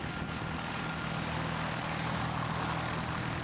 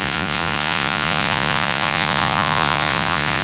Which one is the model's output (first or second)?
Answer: second